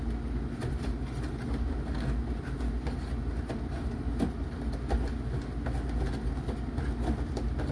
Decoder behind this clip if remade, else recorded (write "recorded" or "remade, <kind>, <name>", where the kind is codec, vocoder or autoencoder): recorded